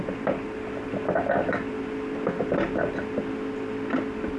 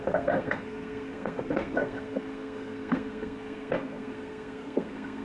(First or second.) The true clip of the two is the first